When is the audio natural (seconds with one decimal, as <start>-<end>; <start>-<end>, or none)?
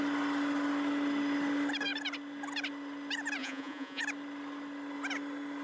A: 0.0-3.4; 4.0-5.6